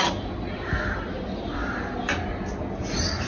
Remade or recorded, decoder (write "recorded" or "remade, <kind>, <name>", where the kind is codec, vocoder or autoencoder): recorded